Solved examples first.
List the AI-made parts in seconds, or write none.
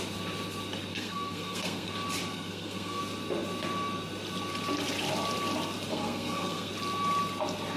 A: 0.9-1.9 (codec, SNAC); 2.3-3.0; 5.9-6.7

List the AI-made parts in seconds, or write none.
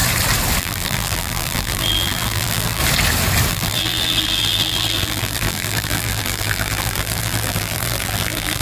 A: 0.6-2.8 (vocoder, BigVGAN v2); 3.5-8.6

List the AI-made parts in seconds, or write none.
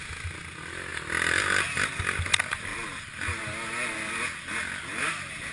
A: none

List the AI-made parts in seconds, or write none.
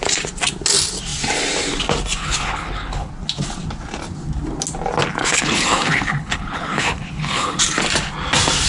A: 2.2-3.1 (codec, HILCodec); 5.2-7.6